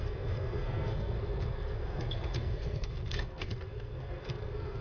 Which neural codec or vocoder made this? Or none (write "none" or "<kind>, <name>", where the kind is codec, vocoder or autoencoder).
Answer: codec, SNAC